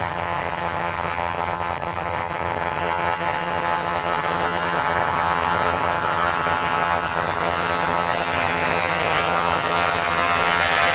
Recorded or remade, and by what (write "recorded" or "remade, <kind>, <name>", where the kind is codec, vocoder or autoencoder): remade, vocoder, HiFi-GAN